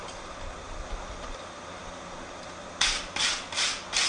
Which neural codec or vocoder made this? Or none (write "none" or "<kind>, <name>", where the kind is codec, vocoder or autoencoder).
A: none